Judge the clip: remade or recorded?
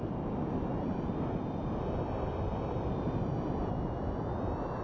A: recorded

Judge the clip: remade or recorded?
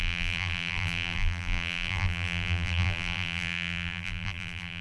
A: remade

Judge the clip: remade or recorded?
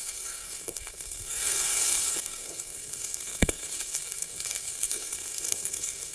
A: remade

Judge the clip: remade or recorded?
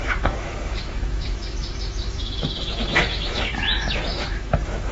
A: remade